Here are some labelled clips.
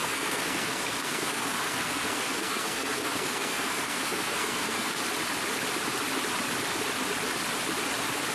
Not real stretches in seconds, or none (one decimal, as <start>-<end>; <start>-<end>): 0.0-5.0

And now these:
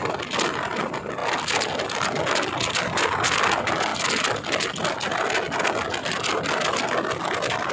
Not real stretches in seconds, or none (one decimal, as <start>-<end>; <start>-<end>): none

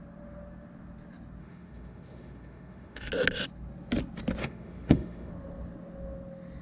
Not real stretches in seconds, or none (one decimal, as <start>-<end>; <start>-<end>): 1.4-3.1; 4.4-5.3